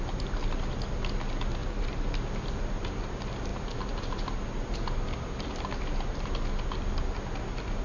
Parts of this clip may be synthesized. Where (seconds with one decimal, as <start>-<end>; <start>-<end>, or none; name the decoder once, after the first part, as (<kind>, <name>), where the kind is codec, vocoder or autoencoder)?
1.6-2.1 (vocoder, BigVGAN v2)

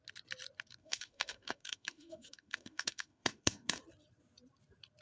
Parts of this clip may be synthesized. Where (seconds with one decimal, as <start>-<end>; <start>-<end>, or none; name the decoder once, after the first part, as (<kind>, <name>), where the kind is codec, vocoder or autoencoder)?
0.8-3.8 (autoencoder, DAC-VAE)

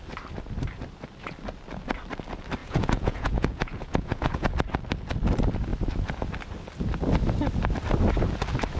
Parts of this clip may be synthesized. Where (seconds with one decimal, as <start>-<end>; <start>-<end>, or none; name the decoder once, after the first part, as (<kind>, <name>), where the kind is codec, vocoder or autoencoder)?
2.6-4.5 (vocoder, Vocos)

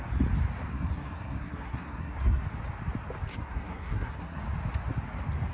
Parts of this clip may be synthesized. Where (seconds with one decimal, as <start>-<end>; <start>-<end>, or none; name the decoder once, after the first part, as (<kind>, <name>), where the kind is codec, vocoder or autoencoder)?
0.7-2.4 (codec, SNAC); 3.3-4.4

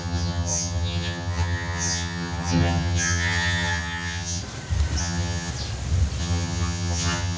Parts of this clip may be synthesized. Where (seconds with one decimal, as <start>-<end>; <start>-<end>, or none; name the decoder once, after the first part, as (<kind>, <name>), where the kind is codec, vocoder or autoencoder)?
0.0-4.4 (vocoder, HiFi-GAN); 5.0-5.5; 6.2-7.4

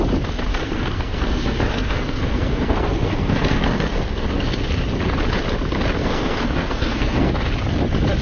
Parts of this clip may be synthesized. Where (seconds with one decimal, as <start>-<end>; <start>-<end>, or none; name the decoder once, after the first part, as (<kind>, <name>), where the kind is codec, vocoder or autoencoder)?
0.5-4.6 (codec, SNAC); 6.0-7.3

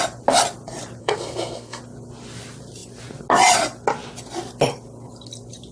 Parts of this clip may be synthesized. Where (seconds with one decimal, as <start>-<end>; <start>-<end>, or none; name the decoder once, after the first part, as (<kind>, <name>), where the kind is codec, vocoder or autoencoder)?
1.0-1.8 (codec, SNAC)